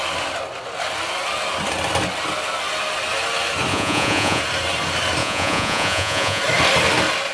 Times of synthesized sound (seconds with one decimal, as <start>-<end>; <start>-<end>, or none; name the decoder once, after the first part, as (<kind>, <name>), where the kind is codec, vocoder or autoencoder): 3.7-4.4 (vocoder, Vocos); 5.2-6.4